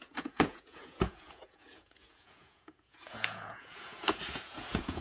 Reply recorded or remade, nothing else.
remade